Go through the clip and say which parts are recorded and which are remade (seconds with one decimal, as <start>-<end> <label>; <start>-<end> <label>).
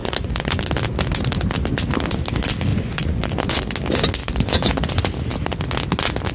0.0-0.6 remade; 0.6-2.7 recorded; 2.7-3.6 remade; 3.6-4.2 recorded; 4.2-4.7 remade; 4.7-6.3 recorded